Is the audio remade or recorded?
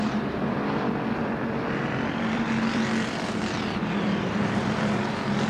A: remade